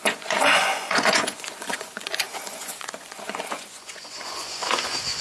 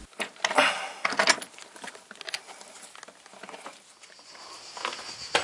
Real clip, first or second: second